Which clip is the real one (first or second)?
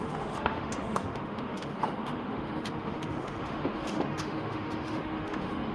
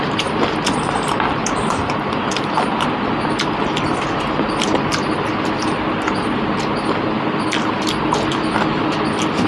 second